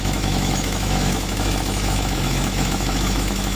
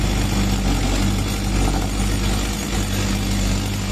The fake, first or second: first